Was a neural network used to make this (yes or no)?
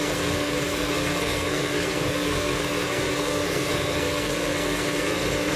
yes